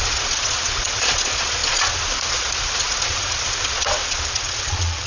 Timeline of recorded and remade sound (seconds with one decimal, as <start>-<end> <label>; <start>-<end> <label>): 0.0-5.1 remade